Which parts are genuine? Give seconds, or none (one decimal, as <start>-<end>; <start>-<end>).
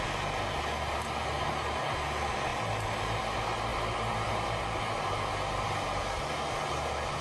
0.0-7.2